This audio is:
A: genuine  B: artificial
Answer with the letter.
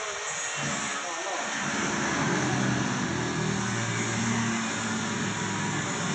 A